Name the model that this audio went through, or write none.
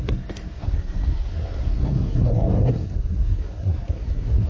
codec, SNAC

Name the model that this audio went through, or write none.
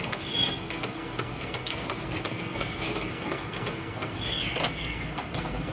codec, SNAC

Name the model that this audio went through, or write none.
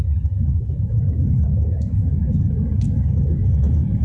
autoencoder, DAC-VAE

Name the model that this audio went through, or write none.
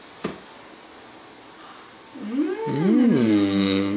none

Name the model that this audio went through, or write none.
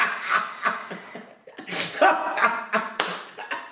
none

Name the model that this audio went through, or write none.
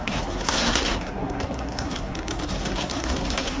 codec, SNAC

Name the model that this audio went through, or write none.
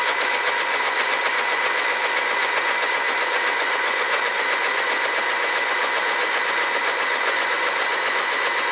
vocoder, Vocos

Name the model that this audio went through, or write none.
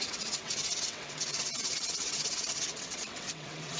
vocoder, WaveNeXt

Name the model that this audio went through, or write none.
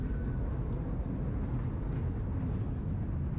none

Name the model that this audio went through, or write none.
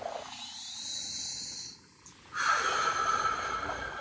none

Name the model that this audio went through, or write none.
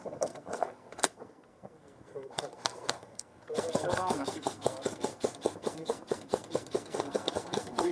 codec, SNAC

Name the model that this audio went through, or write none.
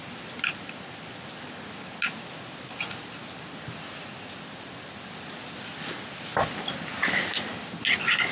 none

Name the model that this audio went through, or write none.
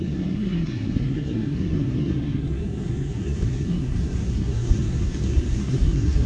codec, SNAC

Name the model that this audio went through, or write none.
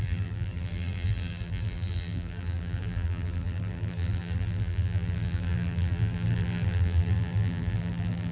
vocoder, BigVGAN v2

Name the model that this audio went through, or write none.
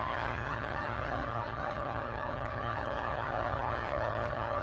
vocoder, HiFi-GAN